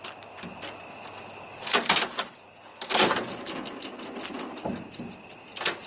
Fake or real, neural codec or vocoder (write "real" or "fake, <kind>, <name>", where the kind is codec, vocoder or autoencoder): real